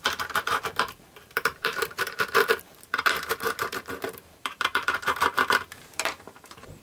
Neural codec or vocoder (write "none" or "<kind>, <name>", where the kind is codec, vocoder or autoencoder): vocoder, BigVGAN v2